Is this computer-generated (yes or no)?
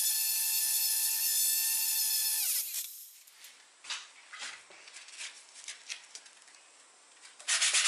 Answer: no